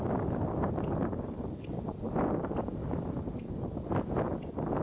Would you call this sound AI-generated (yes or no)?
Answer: no